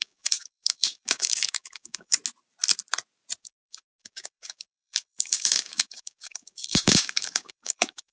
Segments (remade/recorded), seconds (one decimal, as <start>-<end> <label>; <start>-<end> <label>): 0.0-2.2 remade; 2.2-3.4 recorded; 3.4-8.1 remade